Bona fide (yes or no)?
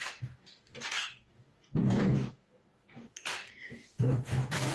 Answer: no